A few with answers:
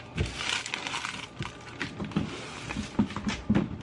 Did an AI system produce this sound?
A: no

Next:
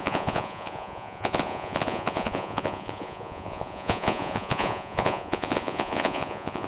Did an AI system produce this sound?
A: yes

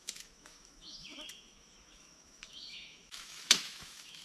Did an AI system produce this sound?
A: yes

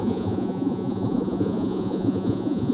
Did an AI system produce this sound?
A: yes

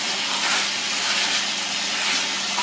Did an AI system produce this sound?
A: no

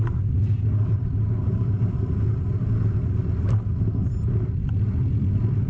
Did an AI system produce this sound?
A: no